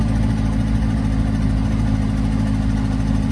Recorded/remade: recorded